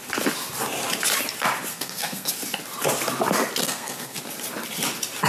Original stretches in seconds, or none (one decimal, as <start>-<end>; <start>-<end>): 0.0-1.7; 2.3-3.6; 4.2-5.3